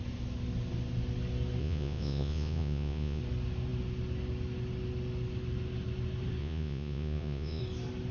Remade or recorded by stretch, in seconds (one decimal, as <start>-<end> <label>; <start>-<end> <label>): 0.0-1.6 recorded; 1.6-3.2 remade; 3.2-6.4 recorded; 6.4-7.6 remade; 7.6-8.1 recorded